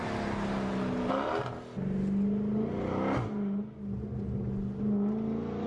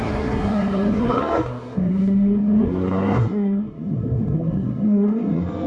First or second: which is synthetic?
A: second